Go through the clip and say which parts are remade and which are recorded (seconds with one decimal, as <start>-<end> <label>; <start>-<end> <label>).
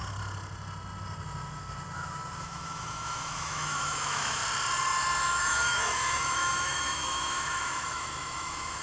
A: 0.0-2.4 recorded; 2.4-4.4 remade; 4.4-5.2 recorded; 5.2-8.8 remade